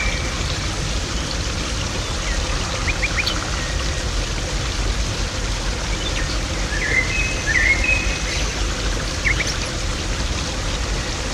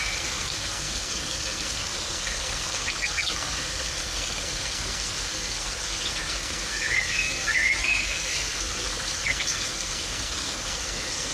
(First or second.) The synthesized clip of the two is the second